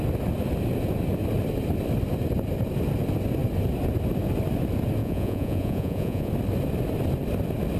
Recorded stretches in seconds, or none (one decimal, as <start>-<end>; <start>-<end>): 0.0-5.0; 6.3-7.8